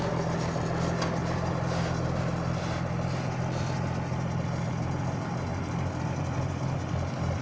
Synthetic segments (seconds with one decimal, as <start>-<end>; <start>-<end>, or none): none